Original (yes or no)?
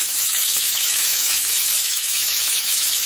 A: no